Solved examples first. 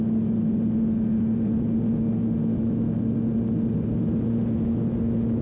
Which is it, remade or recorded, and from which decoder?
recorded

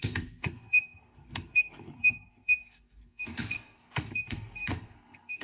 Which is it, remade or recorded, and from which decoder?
remade, codec, SNAC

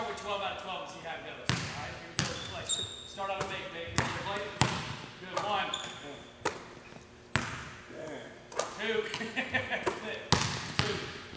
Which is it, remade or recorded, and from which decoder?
recorded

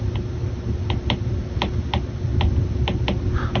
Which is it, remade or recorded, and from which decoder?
recorded